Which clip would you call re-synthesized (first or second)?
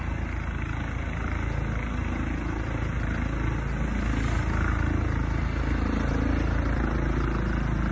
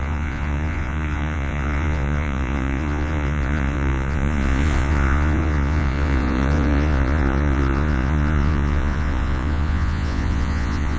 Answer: second